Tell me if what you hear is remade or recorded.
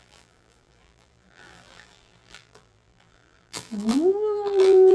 remade